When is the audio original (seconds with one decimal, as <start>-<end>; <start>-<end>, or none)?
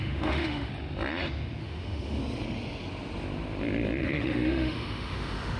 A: 0.7-1.6; 2.2-4.0